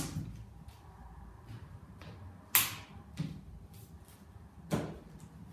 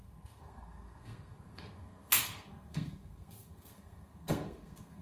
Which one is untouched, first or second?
first